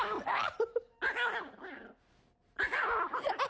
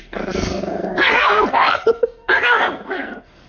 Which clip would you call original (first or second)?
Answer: first